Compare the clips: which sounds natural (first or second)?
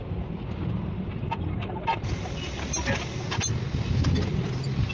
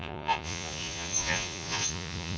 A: first